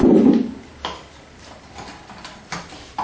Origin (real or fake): real